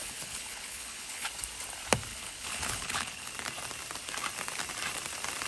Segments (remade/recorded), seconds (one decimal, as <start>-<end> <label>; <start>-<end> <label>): 0.0-1.3 remade; 1.3-2.1 recorded; 2.1-3.3 remade; 3.3-5.5 recorded